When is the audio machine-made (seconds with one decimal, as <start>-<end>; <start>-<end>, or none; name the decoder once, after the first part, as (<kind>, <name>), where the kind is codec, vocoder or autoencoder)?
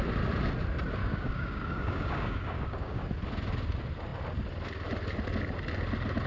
1.0-3.1 (codec, DAC)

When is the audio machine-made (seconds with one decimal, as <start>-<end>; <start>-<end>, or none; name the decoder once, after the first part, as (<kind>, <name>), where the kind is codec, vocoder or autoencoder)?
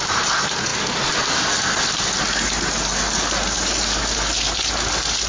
none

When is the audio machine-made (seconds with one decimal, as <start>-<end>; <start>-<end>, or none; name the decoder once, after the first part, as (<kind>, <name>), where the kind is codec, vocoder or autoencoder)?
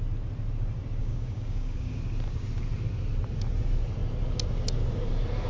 1.0-2.0 (codec, DAC)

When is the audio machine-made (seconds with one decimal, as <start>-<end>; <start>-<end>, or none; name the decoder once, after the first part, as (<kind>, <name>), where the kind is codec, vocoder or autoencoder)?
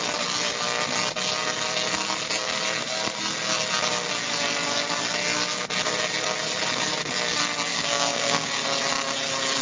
7.7-8.5 (codec, DAC)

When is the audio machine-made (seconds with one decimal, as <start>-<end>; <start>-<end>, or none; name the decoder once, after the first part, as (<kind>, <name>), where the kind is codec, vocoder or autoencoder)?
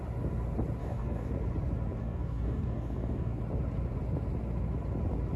0.8-1.3 (codec, DAC); 2.0-3.4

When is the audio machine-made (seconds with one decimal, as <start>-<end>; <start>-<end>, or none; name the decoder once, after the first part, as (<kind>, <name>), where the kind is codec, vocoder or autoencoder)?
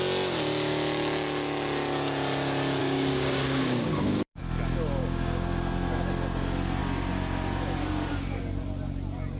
2.8-4.4 (codec, DAC); 5.0-5.6